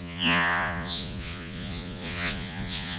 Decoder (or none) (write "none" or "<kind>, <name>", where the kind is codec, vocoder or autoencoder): vocoder, Vocos